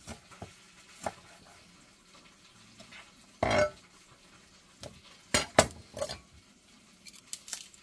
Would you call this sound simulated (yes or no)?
no